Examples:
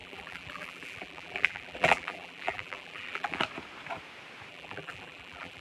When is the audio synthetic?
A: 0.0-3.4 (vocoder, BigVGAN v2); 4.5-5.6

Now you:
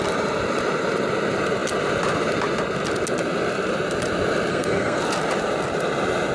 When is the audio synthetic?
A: 4.5-5.0 (codec, SNAC)

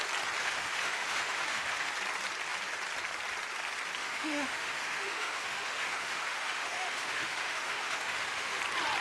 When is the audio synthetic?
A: 0.4-1.9 (autoencoder, DAC-VAE); 4.0-8.6

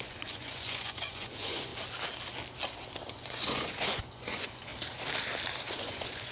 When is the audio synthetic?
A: 0.0-1.7 (vocoder, Vocos); 3.1-4.7; 5.7-6.3

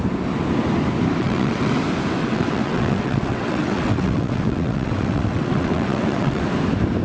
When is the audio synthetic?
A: 1.2-1.7 (vocoder, WaveNeXt); 2.2-6.4